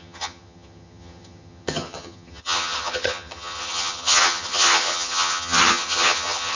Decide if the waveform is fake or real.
fake